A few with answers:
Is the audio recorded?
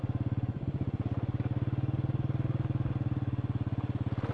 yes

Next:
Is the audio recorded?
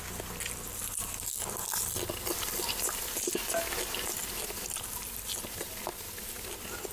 yes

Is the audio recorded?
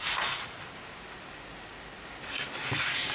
yes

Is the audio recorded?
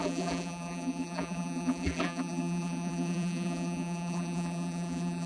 no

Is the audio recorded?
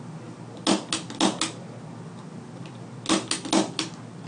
yes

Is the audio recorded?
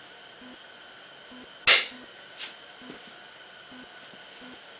yes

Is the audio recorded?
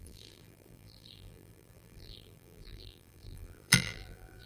no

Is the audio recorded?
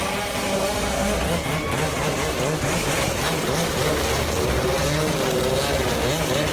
yes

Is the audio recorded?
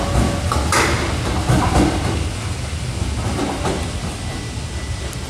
yes